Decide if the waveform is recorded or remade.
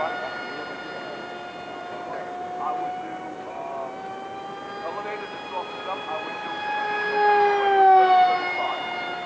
recorded